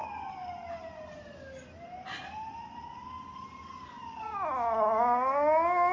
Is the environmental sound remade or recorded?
recorded